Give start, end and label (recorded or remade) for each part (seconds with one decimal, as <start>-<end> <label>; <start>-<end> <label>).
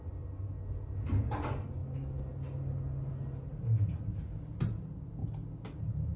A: 0.0-6.2 recorded